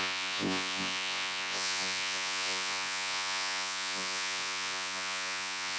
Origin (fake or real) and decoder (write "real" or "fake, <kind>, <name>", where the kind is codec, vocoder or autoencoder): fake, vocoder, Vocos